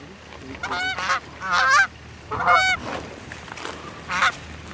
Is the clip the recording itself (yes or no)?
yes